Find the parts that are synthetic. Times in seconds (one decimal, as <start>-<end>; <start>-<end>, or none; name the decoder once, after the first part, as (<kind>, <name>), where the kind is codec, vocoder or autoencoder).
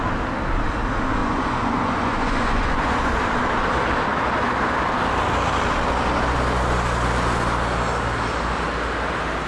1.2-3.1 (vocoder, Vocos)